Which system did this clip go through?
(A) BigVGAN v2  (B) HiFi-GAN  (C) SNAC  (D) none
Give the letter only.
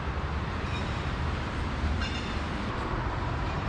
A